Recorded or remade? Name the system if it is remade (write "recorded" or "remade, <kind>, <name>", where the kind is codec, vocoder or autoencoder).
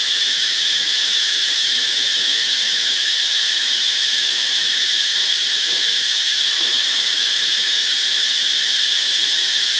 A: remade, autoencoder, DAC-VAE